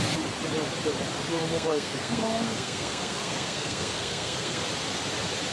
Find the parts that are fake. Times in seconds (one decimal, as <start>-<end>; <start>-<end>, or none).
1.3-4.6